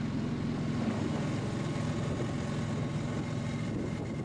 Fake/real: real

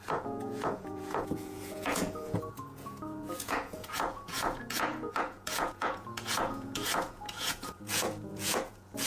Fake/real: fake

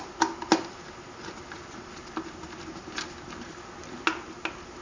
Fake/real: real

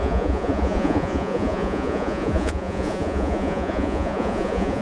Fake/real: fake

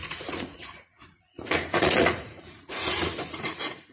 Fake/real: fake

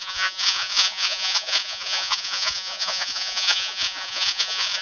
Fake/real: fake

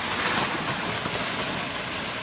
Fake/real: real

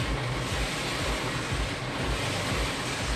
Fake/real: real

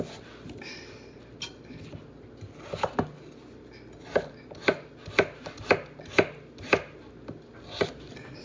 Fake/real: real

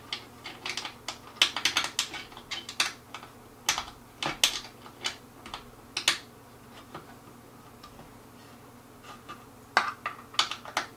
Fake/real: real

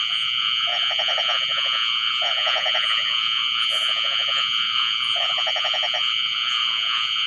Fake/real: fake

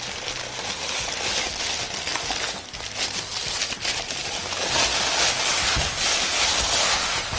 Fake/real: real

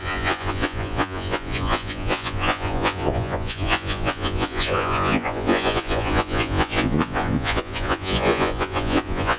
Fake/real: fake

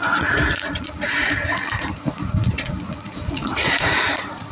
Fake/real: fake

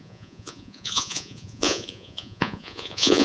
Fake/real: fake